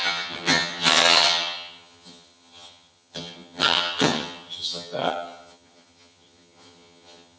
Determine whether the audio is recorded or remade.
remade